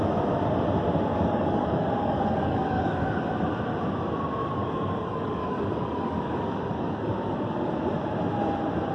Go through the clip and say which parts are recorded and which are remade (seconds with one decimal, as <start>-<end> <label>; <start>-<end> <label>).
0.0-1.1 recorded; 1.1-3.2 remade; 3.2-4.4 recorded; 4.4-7.7 remade; 7.7-8.9 recorded